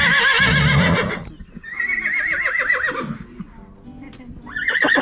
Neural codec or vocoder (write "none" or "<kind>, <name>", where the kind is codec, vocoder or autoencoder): none